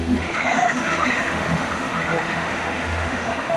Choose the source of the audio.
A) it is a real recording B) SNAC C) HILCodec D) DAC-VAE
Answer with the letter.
D